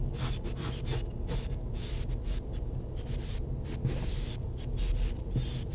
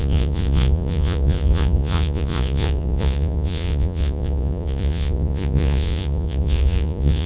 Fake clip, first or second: second